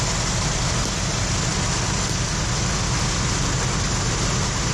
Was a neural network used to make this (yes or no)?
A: no